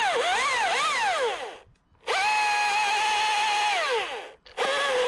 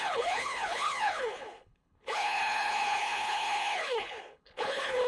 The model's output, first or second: second